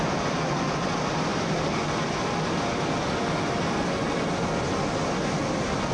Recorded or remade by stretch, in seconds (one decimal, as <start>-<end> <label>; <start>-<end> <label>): 0.0-5.9 recorded